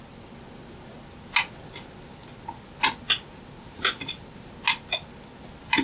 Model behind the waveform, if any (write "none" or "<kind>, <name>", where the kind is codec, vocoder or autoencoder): none